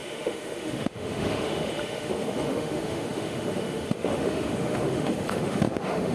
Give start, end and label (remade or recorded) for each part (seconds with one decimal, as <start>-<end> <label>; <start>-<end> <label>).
0.0-6.1 remade